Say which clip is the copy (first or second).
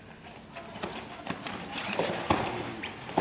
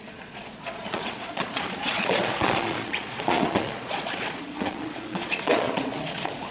second